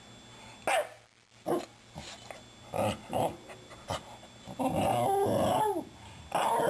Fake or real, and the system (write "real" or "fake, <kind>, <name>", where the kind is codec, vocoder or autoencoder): real